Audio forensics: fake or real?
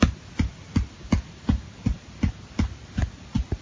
real